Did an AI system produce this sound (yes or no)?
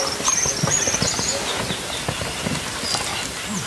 no